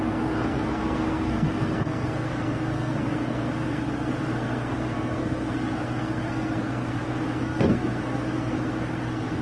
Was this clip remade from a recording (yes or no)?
yes